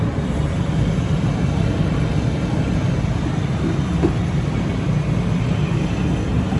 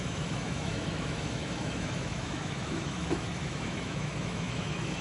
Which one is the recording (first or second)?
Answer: first